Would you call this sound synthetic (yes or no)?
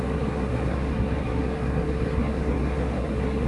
yes